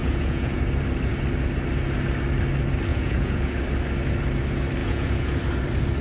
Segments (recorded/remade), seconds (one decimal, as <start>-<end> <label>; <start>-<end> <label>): 0.0-0.6 remade; 0.6-2.9 recorded; 2.9-3.6 remade; 3.6-4.8 recorded; 4.8-5.4 remade; 5.4-6.0 recorded